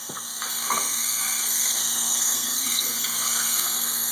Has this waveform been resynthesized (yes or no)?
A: yes